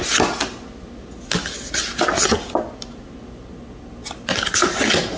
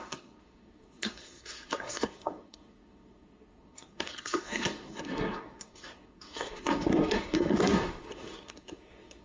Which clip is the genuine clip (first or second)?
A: first